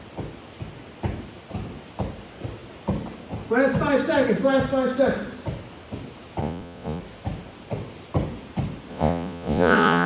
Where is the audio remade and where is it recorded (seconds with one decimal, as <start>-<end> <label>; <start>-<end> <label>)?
0.0-6.4 recorded; 6.4-7.0 remade; 7.0-8.9 recorded; 8.9-10.1 remade

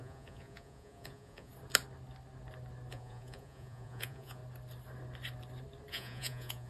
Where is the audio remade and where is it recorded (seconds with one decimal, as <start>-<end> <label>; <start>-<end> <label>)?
0.0-1.5 remade; 1.5-2.9 recorded; 2.9-4.4 remade; 4.4-5.9 recorded; 5.9-6.7 remade

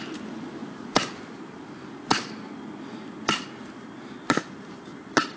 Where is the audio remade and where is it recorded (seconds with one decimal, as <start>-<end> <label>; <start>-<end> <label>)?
0.0-5.4 recorded

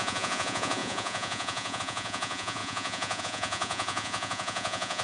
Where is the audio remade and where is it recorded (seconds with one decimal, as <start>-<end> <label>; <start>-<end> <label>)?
0.0-5.0 remade

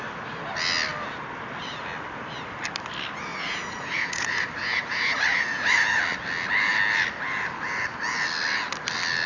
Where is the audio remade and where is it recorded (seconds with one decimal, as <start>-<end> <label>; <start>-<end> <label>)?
0.0-3.3 recorded; 3.3-6.0 remade; 6.0-9.3 recorded

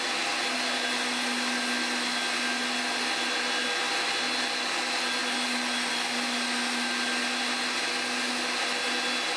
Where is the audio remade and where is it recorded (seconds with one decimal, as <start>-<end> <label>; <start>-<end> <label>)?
0.0-9.4 recorded